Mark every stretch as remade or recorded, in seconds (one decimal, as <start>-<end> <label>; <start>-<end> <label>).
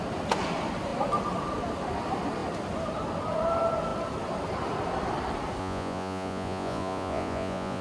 0.0-5.6 recorded; 5.6-7.8 remade